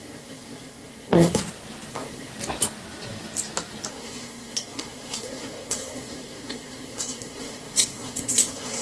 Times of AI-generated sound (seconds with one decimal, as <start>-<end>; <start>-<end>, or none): 0.0-1.4; 1.9-2.3; 3.9-8.8